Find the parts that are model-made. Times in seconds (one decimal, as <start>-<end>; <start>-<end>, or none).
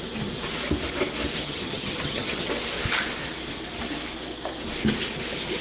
1.4-2.5